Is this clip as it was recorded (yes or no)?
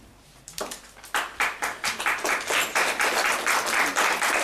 yes